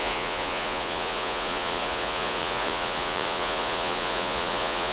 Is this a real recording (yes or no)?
no